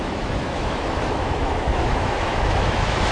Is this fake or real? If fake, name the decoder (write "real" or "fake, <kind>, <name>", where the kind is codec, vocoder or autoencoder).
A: fake, autoencoder, DAC-VAE